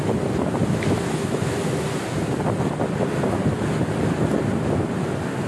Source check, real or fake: real